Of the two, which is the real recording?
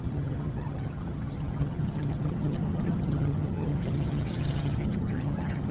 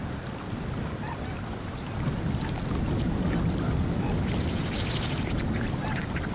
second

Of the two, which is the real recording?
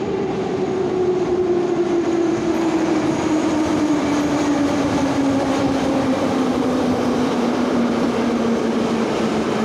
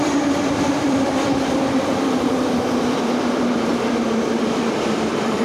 first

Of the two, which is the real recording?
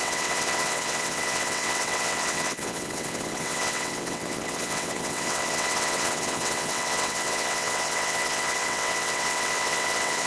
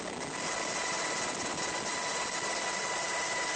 second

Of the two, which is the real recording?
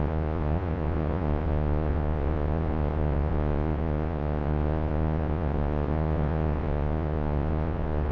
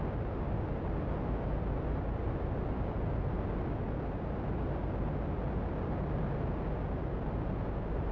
second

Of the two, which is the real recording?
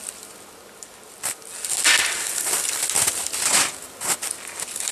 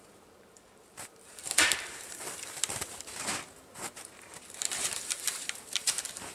first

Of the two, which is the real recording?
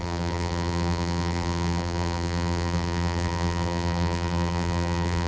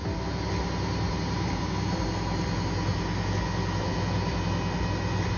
second